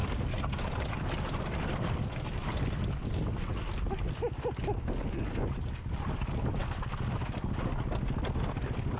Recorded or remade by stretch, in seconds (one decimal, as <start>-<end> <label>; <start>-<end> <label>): 0.0-9.0 recorded